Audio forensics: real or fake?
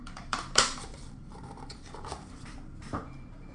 fake